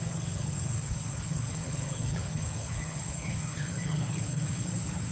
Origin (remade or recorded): remade